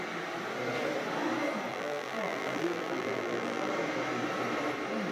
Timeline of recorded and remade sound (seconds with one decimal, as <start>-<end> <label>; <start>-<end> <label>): 0.0-1.7 recorded; 1.7-3.7 remade; 3.7-5.1 recorded